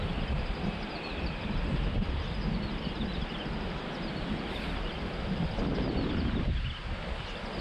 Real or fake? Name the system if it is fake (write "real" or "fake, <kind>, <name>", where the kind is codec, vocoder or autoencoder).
real